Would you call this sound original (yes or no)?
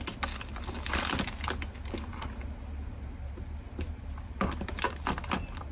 yes